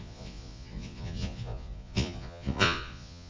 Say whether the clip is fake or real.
fake